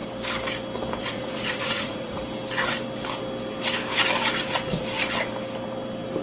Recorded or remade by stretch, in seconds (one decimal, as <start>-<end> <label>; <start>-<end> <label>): 0.0-1.0 recorded; 1.0-2.2 remade; 2.2-6.2 recorded